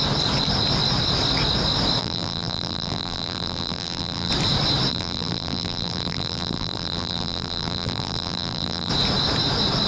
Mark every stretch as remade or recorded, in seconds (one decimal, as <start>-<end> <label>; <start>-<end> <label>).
0.0-2.0 recorded; 2.0-4.3 remade; 4.3-4.9 recorded; 4.9-8.9 remade; 8.9-9.9 recorded